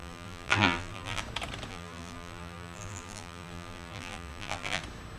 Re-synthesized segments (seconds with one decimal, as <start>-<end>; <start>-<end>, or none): 0.0-1.2; 1.7-4.8